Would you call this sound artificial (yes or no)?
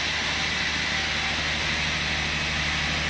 no